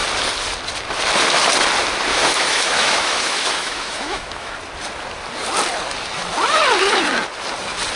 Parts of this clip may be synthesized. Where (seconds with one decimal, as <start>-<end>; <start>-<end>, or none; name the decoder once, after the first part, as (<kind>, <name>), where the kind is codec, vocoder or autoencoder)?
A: 2.1-4.5 (autoencoder, DAC-VAE)